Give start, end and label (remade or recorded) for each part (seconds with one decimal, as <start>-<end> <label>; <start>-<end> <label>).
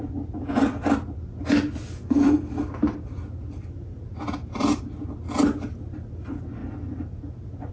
0.0-7.7 recorded